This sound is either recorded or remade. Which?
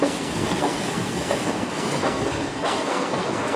remade